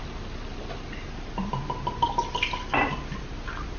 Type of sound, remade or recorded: recorded